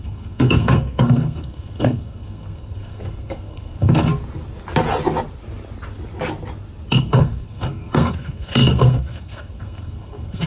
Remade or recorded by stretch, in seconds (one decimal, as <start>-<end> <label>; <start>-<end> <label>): 0.0-4.1 remade; 4.1-6.9 recorded; 6.9-10.5 remade

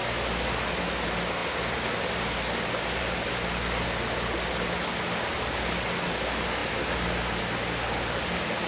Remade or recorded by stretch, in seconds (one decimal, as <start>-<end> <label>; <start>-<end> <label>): 0.0-8.7 recorded

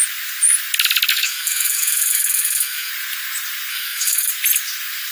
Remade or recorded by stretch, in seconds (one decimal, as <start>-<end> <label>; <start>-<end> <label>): 0.0-1.1 recorded; 1.1-2.9 remade; 2.9-3.7 recorded; 3.7-4.3 remade; 4.3-5.1 recorded

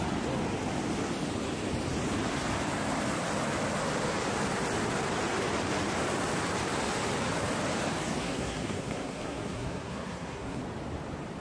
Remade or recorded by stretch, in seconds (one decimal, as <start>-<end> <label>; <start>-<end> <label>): 0.0-8.2 recorded; 8.2-10.6 remade; 10.6-11.4 recorded

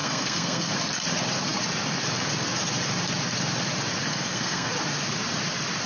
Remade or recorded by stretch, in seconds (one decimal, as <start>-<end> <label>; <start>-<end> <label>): 0.0-0.7 remade; 0.7-4.1 recorded; 4.1-4.7 remade; 4.7-5.9 recorded

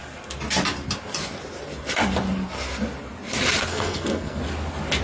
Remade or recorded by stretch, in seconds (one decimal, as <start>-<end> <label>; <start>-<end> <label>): 0.0-3.7 recorded; 3.7-4.4 remade; 4.4-5.0 recorded

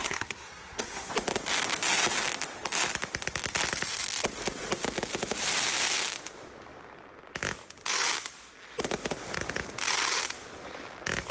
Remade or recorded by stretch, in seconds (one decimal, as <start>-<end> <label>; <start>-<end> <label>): 0.0-1.1 remade; 1.1-11.3 recorded

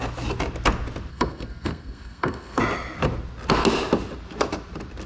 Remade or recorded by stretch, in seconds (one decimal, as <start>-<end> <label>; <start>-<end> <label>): 0.0-1.1 recorded; 1.1-2.6 remade; 2.6-5.1 recorded